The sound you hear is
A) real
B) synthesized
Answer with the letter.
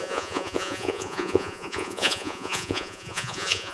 B